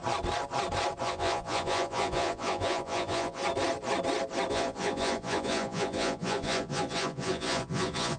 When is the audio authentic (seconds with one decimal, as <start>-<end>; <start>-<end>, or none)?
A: 0.0-1.0; 3.4-4.5